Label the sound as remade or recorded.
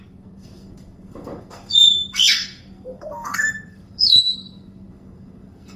remade